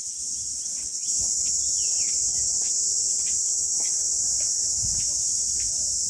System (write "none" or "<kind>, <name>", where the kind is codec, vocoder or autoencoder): none